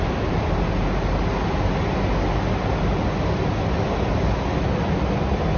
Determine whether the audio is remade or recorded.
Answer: recorded